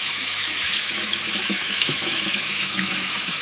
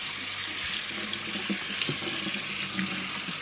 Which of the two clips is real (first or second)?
second